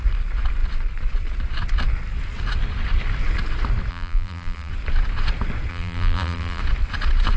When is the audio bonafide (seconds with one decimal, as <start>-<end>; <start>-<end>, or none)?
0.0-3.9; 4.7-5.7; 6.6-7.4